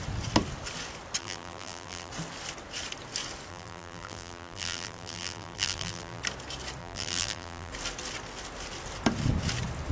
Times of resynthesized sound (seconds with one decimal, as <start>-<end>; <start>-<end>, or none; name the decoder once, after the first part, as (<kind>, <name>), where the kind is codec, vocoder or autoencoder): 1.2-2.1 (vocoder, BigVGAN v2); 3.5-6.2; 6.8-7.7

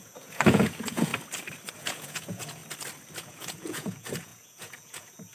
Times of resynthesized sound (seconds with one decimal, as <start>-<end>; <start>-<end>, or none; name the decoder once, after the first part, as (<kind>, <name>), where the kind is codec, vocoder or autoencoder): 0.0-1.1 (vocoder, Vocos); 1.7-2.6; 3.2-5.3

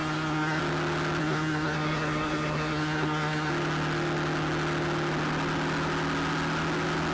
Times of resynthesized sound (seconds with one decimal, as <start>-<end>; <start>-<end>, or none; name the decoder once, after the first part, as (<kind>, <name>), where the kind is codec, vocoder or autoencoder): 0.0-0.6 (codec, SNAC); 1.2-3.5